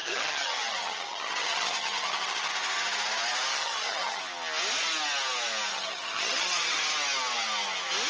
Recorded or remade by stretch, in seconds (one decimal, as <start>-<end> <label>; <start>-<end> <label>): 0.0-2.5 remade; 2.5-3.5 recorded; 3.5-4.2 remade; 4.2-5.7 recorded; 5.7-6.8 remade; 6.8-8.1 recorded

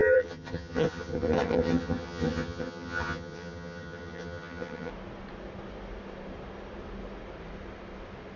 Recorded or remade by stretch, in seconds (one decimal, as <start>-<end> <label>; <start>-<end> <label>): 0.0-4.9 remade; 4.9-8.4 recorded

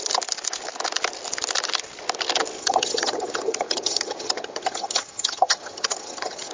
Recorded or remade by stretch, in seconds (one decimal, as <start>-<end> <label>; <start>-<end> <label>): 0.0-2.6 recorded; 2.6-6.5 remade